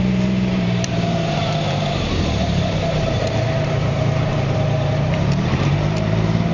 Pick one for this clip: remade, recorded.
remade